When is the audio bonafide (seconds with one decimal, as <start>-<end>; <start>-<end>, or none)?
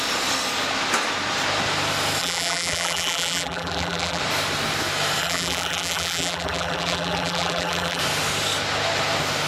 0.0-2.2; 4.2-5.2; 8.0-9.5